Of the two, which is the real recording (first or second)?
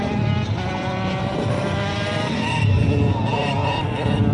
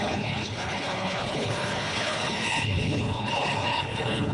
first